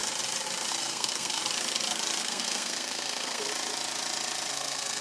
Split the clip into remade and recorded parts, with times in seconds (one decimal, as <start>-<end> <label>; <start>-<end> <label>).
0.0-0.7 recorded; 0.7-1.4 remade; 1.4-2.2 recorded; 2.2-3.5 remade; 3.5-4.5 recorded; 4.5-5.0 remade